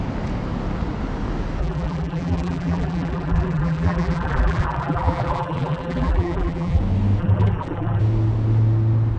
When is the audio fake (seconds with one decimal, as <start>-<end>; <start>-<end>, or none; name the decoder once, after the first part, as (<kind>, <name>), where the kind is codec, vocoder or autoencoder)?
1.6-6.8 (vocoder, BigVGAN v2); 7.2-8.0